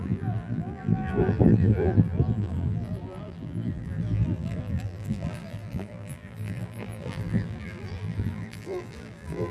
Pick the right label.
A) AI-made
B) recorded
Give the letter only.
A